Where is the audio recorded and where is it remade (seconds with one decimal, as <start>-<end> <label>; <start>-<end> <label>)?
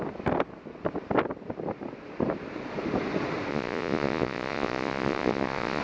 0.0-3.5 recorded; 3.5-5.8 remade